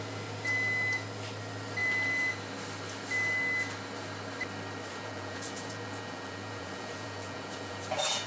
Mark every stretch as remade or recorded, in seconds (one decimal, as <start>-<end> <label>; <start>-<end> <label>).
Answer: 0.0-4.9 recorded; 4.9-8.3 remade